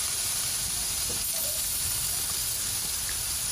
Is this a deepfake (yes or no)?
no